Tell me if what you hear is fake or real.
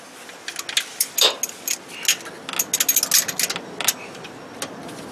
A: real